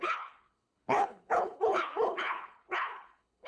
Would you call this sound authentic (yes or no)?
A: no